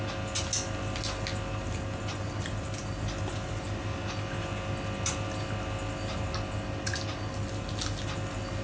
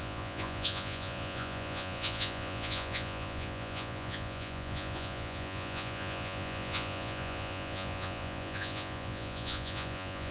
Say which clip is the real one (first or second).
first